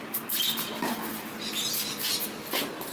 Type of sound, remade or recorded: recorded